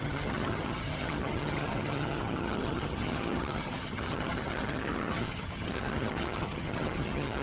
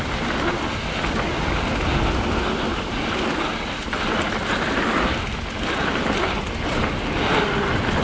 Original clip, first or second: second